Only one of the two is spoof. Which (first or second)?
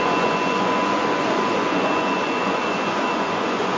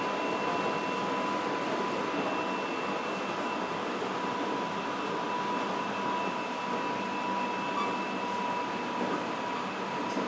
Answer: first